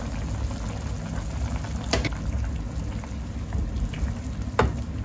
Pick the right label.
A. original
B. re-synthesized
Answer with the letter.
A